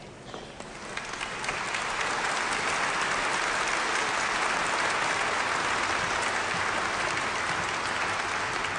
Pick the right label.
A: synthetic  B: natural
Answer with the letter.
B